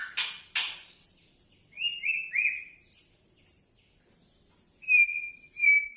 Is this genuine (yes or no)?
yes